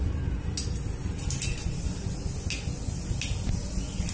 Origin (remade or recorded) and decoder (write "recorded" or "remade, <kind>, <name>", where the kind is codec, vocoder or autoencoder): recorded